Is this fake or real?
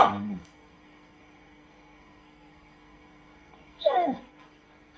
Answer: fake